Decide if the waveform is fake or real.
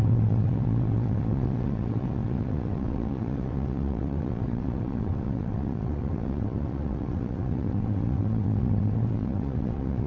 fake